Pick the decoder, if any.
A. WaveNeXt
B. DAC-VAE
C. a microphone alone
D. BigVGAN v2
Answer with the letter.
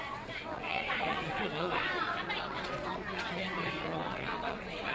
A